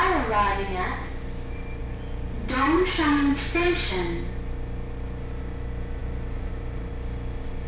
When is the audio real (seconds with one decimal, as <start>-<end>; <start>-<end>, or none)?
0.0-1.8; 3.9-6.0; 6.9-7.7